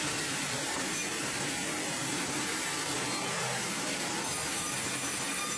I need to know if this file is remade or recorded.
recorded